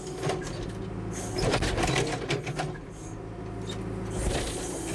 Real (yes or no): yes